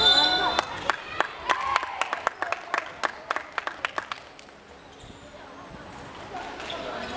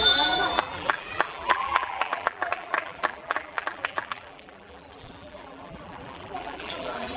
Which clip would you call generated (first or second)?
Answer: second